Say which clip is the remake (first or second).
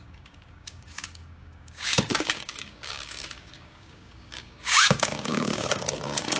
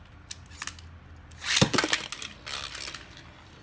first